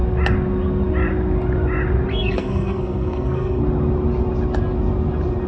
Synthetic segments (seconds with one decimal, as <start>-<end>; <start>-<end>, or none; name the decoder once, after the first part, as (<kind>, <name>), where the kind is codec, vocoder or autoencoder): 2.1-3.6 (codec, SNAC)